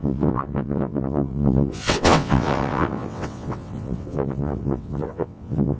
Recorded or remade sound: remade